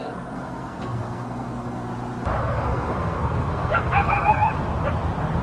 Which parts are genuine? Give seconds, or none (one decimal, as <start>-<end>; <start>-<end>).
1.9-2.4; 4.5-5.4